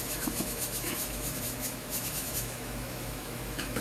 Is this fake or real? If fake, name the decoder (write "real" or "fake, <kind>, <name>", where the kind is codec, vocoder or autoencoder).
fake, autoencoder, DAC-VAE